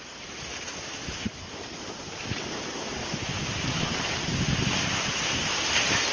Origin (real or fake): real